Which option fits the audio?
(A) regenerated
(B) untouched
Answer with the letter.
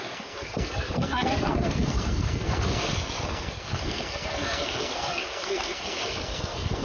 A